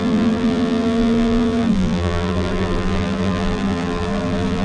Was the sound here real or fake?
fake